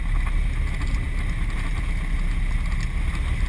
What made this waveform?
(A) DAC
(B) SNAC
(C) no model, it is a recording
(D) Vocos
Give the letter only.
C